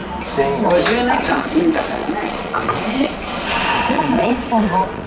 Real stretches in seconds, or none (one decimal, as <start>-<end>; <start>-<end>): 0.0-1.1